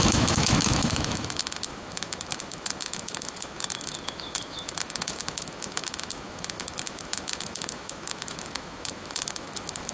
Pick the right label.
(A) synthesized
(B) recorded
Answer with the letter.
A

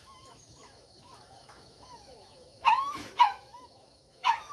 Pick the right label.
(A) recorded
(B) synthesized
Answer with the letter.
B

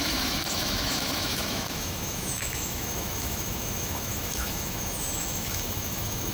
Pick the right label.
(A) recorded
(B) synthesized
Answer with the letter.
B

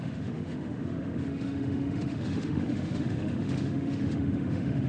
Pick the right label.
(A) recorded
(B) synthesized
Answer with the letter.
B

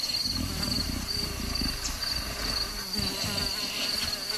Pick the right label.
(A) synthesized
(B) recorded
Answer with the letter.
B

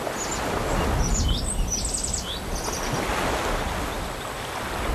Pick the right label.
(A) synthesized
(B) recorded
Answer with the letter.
B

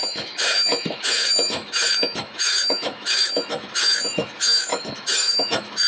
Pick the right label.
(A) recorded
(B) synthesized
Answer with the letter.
B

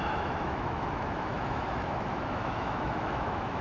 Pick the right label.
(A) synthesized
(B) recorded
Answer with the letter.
A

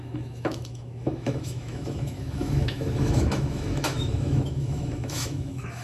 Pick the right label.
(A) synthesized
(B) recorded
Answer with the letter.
A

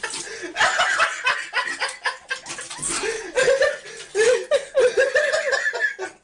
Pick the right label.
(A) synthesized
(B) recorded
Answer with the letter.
B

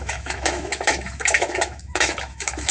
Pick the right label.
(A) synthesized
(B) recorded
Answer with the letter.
A